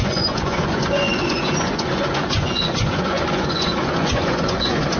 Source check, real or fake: fake